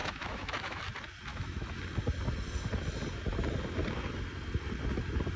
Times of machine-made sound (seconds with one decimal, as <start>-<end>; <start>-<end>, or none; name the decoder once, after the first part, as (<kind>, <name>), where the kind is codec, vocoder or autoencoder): 0.0-0.8 (autoencoder, DAC-VAE); 1.3-1.8